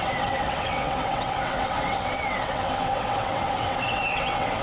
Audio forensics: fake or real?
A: fake